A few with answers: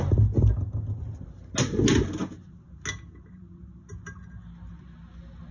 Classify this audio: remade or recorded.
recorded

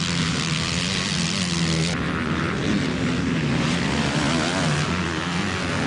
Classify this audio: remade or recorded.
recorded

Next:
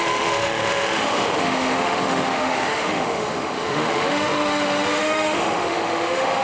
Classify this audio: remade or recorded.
remade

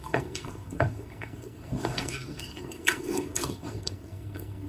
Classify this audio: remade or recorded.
remade